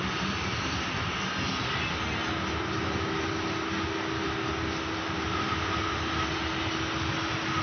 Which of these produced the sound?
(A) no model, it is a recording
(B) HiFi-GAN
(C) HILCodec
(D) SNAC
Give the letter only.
A